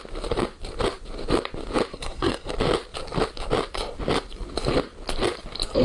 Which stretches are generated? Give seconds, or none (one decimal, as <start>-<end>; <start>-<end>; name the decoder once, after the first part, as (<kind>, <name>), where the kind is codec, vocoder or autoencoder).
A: 1.9-2.5 (codec, SNAC)